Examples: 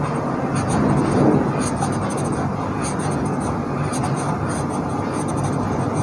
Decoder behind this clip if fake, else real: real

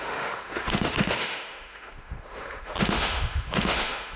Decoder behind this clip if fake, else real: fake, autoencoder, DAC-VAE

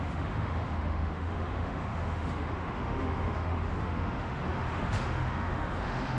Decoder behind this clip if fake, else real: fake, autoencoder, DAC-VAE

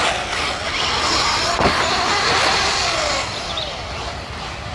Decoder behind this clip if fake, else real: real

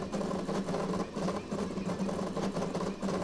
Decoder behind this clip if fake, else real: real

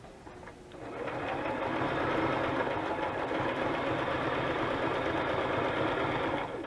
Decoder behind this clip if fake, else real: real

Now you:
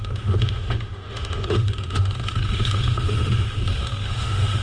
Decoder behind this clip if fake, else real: fake, autoencoder, DAC-VAE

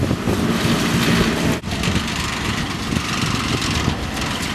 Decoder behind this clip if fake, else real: real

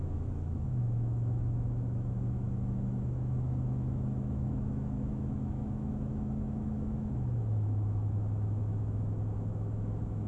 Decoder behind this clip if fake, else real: fake, autoencoder, DAC-VAE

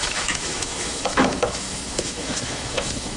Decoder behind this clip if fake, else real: fake, autoencoder, DAC-VAE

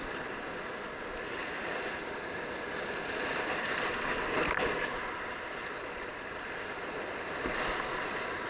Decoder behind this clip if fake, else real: real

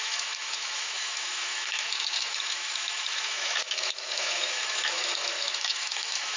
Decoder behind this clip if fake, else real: fake, autoencoder, DAC-VAE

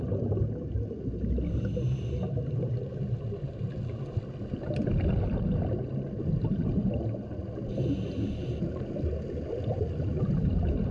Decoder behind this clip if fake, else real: real